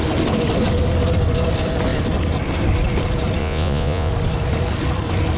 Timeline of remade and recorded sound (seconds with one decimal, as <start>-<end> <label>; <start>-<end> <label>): 0.0-3.4 recorded; 3.4-4.1 remade; 4.1-5.4 recorded